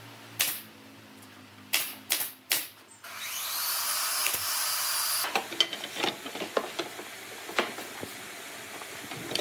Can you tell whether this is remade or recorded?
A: recorded